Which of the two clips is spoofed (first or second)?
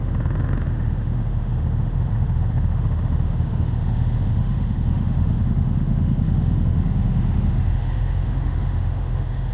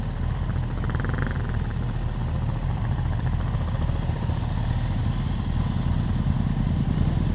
first